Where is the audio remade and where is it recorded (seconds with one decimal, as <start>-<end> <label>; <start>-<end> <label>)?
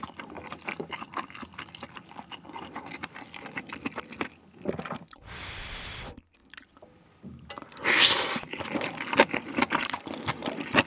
0.0-10.9 recorded